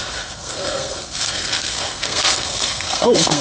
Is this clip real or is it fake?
fake